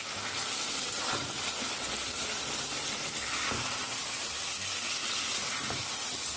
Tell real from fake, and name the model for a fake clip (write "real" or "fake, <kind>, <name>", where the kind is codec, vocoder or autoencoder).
real